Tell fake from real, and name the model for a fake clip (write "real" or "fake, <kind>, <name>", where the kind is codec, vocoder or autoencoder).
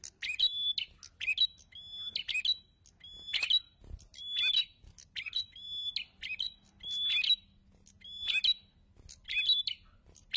real